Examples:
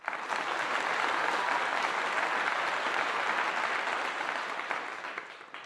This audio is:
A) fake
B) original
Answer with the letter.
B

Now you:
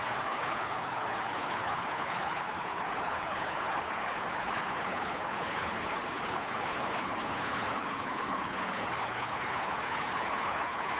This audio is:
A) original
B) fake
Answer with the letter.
B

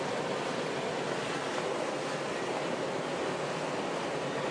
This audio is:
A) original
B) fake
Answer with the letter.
A